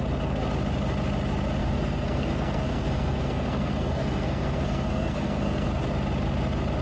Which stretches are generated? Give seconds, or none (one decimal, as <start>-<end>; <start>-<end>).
1.6-5.7